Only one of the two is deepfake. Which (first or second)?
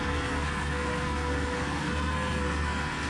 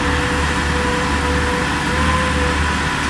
first